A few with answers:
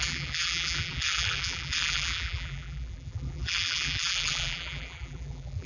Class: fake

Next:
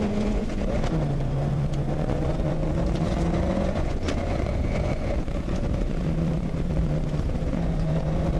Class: fake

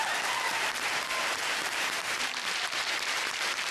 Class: fake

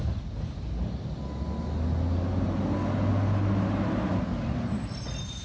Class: real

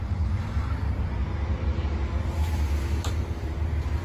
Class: real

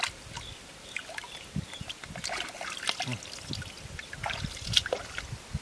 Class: real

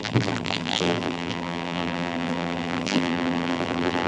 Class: fake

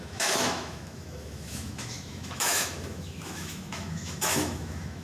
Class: fake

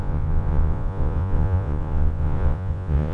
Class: fake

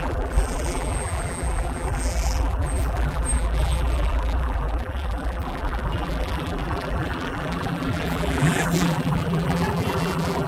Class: fake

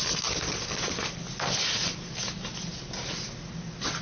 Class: real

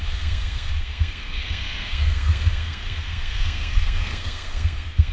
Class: fake